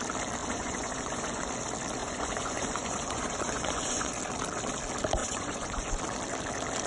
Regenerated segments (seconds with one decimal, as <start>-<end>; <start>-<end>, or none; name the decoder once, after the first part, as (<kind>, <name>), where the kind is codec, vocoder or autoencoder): 0.4-1.5 (vocoder, Vocos); 2.0-4.1; 5.2-6.0